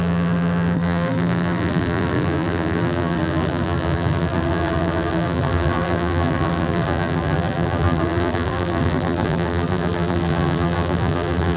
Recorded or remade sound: remade